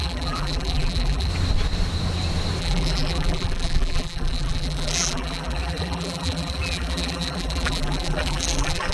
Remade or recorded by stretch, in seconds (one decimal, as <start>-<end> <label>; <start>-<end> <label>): 0.0-1.3 remade; 1.3-2.6 recorded; 2.6-8.9 remade